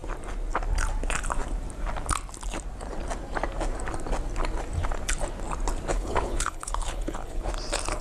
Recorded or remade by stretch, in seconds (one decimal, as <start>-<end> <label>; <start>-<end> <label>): 0.0-5.9 recorded; 5.9-7.5 remade; 7.5-8.0 recorded